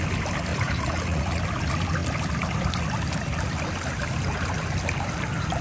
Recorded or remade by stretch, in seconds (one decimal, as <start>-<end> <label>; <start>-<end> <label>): 0.0-0.5 recorded; 0.5-1.4 remade; 1.4-5.6 recorded